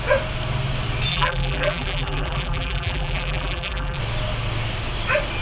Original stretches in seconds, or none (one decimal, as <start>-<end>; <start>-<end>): 0.0-1.1; 4.0-5.4